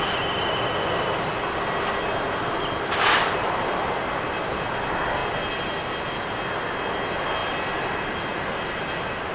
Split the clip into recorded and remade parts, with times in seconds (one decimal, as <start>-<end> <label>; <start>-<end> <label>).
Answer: 0.0-9.3 recorded